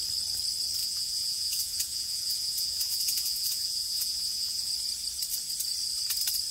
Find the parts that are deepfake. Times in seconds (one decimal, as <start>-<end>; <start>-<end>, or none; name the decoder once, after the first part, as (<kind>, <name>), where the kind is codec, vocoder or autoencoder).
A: 0.8-4.7 (vocoder, Vocos)